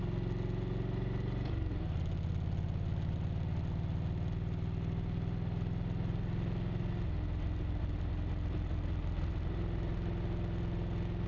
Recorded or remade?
recorded